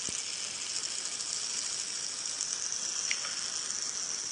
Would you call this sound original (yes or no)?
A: yes